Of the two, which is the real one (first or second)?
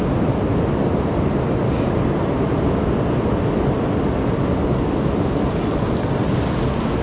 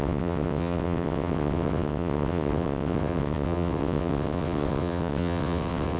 first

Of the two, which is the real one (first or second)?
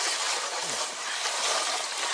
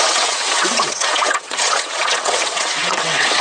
first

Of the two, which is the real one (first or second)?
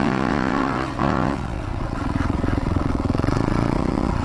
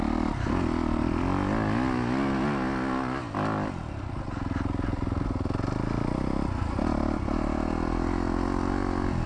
second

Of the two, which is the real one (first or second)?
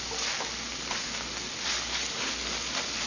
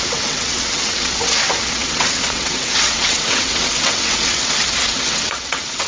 first